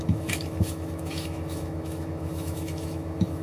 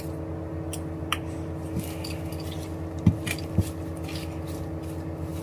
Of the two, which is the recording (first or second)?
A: second